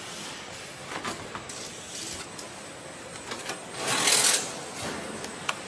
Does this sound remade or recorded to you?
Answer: recorded